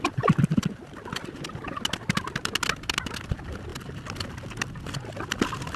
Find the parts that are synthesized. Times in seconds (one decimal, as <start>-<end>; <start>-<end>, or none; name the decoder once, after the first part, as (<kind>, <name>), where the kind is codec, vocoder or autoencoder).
none